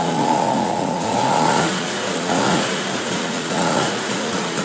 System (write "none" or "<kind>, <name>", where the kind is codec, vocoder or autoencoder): vocoder, Vocos